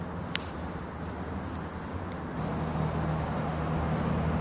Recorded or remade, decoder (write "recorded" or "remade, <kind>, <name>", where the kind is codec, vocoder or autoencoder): recorded